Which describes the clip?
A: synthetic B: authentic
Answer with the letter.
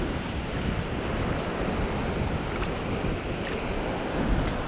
B